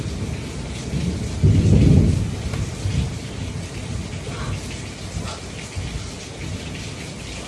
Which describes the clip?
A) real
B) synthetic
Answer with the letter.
A